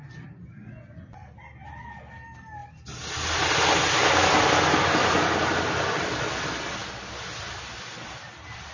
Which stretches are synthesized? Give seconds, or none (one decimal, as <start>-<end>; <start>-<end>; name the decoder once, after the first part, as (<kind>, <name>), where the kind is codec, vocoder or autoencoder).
none